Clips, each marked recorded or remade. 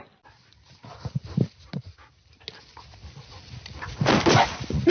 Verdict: recorded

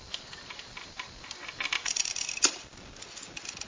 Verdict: recorded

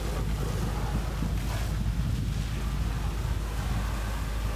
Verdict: recorded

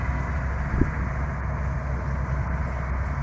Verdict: recorded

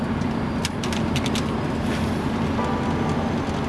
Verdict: recorded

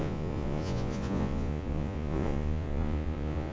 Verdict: remade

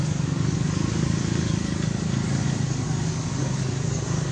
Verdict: remade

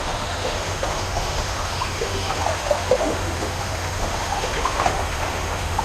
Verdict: remade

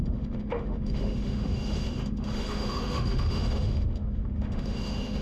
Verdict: remade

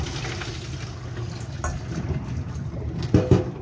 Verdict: recorded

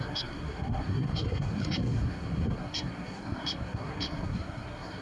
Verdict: remade